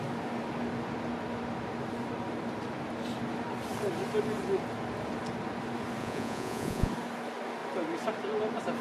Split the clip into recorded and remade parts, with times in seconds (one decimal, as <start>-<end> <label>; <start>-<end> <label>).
0.0-6.0 recorded; 6.0-6.9 remade; 6.9-8.8 recorded